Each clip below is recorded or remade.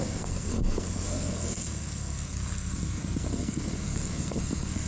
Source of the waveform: remade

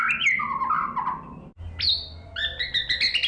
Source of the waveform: recorded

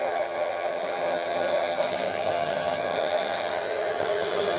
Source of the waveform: remade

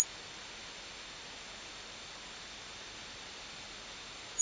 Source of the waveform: recorded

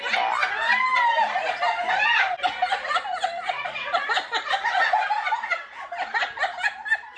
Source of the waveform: recorded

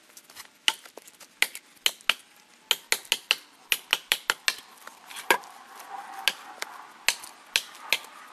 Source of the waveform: recorded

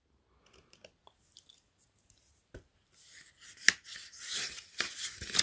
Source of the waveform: recorded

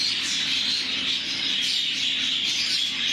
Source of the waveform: recorded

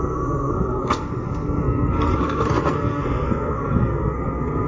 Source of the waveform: remade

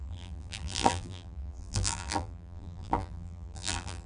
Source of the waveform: remade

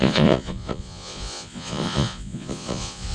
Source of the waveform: remade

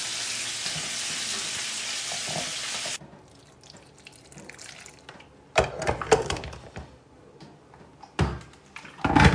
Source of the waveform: recorded